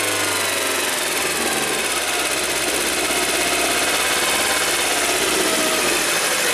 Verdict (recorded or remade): recorded